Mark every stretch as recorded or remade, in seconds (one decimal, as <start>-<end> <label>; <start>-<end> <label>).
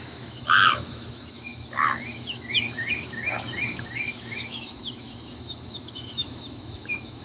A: 0.0-7.2 remade